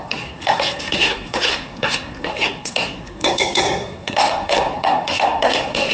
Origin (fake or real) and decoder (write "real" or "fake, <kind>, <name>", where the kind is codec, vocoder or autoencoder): fake, codec, SNAC